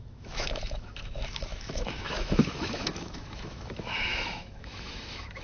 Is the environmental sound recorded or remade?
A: remade